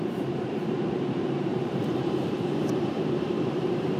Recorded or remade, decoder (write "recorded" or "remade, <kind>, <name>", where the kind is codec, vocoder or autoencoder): remade, vocoder, BigVGAN v2